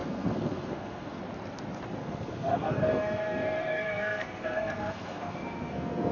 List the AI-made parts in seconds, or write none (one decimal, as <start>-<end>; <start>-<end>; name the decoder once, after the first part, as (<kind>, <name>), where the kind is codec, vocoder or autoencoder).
0.0-1.2 (codec, SNAC); 2.0-6.1